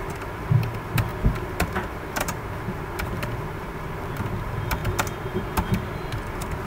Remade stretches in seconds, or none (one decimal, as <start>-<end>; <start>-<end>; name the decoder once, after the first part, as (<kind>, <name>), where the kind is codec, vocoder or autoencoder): none